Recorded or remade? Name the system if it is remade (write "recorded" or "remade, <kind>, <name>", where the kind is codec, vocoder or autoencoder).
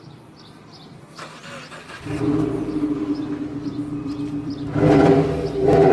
remade, vocoder, BigVGAN v2